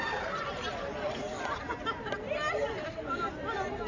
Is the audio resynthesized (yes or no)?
no